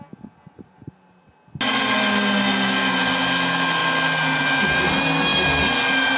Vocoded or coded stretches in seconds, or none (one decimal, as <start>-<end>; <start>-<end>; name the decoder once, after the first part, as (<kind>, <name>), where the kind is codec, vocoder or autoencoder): none